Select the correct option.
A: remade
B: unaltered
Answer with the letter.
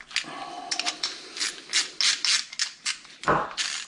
B